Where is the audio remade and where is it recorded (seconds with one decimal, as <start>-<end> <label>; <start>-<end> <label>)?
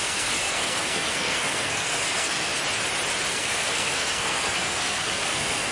0.0-2.5 remade; 2.5-3.3 recorded; 3.3-5.7 remade